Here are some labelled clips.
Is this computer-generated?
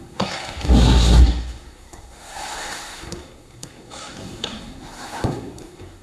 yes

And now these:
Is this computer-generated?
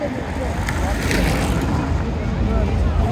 no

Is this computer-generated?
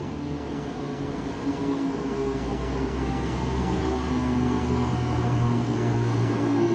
yes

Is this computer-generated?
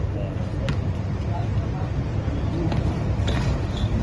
no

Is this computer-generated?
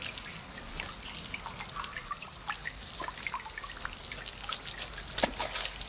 no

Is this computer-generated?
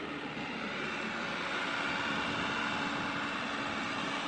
no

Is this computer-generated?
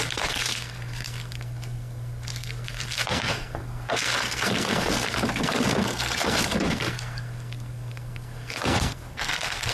yes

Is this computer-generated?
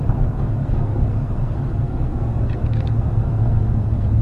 yes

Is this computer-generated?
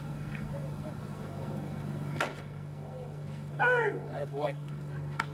yes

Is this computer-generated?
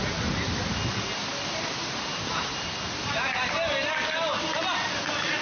no